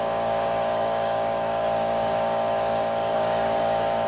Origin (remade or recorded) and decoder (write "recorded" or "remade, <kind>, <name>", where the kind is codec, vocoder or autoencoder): remade, codec, DAC